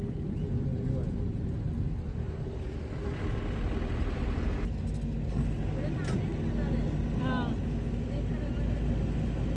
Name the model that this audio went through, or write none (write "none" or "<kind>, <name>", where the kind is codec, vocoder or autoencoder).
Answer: none